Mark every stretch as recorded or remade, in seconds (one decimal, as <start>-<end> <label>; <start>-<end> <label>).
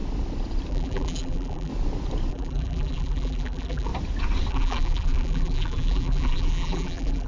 0.0-0.7 recorded; 0.7-1.7 remade; 1.7-2.3 recorded; 2.3-3.9 remade; 3.9-4.5 recorded; 4.5-7.3 remade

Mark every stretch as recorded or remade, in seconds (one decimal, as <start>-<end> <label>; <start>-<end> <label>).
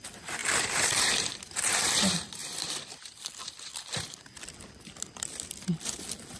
0.0-0.4 recorded; 0.4-1.4 remade; 1.4-2.4 recorded; 2.4-5.0 remade; 5.0-6.4 recorded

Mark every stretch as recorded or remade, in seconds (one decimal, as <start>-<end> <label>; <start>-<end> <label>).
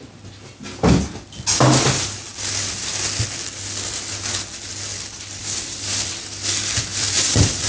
0.0-2.3 recorded; 2.3-2.8 remade; 2.8-4.9 recorded; 4.9-6.1 remade; 6.1-6.9 recorded; 6.9-7.7 remade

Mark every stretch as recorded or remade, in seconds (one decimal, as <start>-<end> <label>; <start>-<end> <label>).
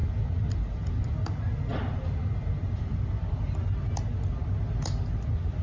0.0-5.6 recorded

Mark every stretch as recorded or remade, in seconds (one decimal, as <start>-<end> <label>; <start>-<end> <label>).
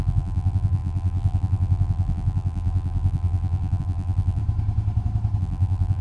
0.0-4.4 remade; 4.4-5.4 recorded; 5.4-6.0 remade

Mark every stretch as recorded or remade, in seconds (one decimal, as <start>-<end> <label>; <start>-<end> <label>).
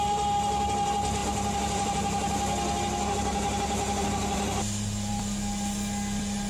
0.0-6.5 recorded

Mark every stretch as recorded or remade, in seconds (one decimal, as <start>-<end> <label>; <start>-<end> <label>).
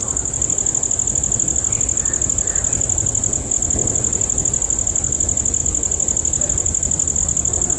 0.0-7.8 recorded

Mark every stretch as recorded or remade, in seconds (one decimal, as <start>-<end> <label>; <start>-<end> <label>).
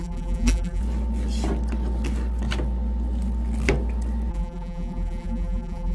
0.0-0.8 remade; 0.8-4.3 recorded; 4.3-5.9 remade